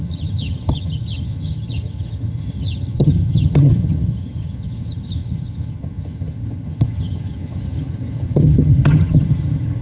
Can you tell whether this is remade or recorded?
remade